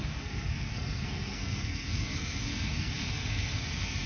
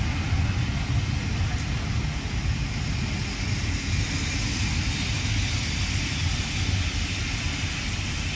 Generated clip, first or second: first